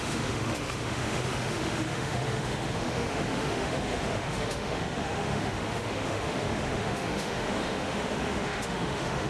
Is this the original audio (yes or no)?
no